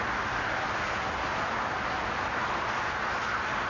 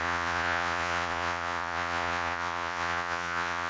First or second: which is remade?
second